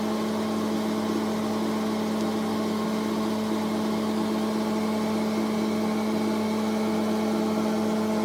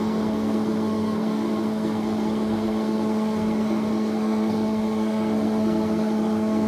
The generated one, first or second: second